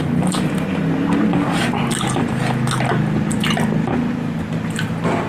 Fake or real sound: real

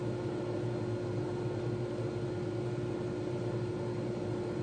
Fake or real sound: real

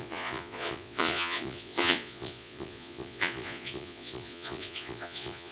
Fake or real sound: fake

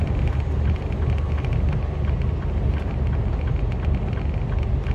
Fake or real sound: real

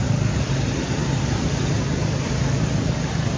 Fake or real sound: real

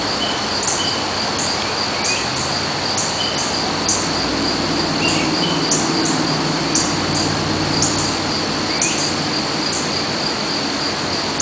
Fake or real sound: real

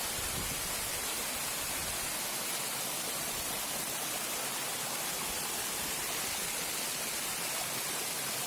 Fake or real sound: real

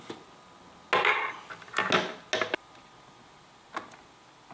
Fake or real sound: real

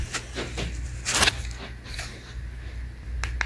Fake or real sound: real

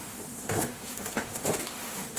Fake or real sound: fake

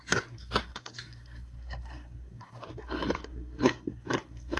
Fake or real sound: fake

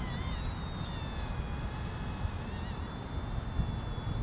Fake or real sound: real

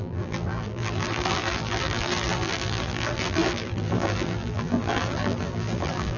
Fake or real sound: fake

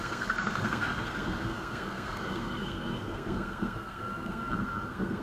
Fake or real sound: fake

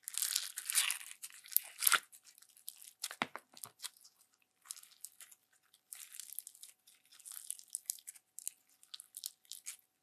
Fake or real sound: real